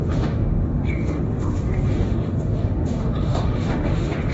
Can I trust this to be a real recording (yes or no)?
no